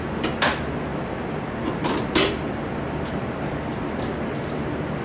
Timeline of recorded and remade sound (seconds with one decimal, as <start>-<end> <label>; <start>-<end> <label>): 0.0-5.0 recorded